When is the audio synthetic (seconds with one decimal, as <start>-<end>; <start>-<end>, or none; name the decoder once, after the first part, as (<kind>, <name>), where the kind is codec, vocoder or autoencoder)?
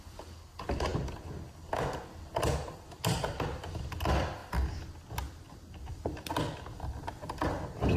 none